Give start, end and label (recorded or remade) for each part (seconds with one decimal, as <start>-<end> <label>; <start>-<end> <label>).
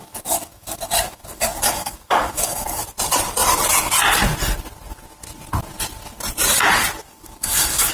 0.0-2.8 remade; 2.8-7.0 recorded; 7.0-7.9 remade